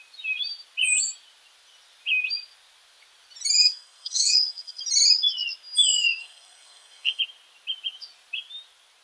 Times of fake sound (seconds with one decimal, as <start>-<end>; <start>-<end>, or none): 3.6-4.8; 6.2-7.2